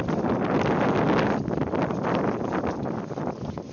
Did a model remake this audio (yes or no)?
no